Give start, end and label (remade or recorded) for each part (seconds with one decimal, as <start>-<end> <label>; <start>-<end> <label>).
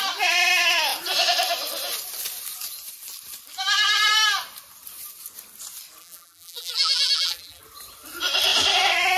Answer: 0.0-6.0 recorded; 6.0-7.6 remade; 7.6-9.2 recorded